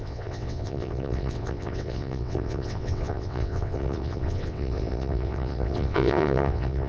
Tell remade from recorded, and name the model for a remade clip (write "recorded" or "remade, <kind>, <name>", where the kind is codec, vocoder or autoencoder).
remade, vocoder, WaveNeXt